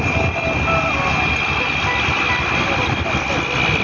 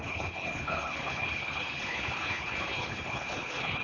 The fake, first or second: second